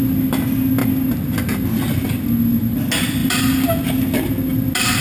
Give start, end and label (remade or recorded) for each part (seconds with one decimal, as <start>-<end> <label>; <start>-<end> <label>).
0.0-5.0 recorded